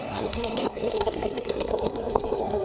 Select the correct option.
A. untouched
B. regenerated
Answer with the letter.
B